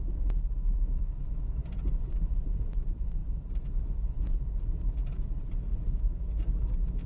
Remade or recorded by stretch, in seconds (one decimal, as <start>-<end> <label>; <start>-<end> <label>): 0.0-0.4 recorded; 0.4-1.6 remade; 1.6-7.1 recorded